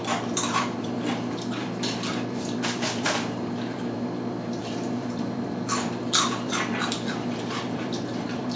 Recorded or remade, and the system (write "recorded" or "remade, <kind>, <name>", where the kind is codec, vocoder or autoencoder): remade, vocoder, BigVGAN v2